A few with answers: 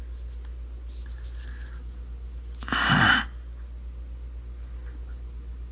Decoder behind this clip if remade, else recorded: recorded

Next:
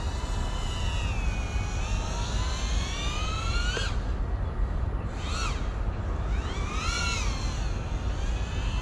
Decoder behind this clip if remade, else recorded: recorded